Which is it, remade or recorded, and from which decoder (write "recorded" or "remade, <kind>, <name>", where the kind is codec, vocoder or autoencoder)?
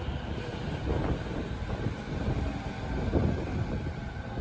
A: recorded